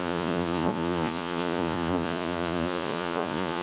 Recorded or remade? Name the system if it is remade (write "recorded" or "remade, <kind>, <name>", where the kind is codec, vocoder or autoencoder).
remade, vocoder, Vocos